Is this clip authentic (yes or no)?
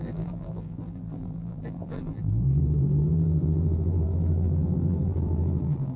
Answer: no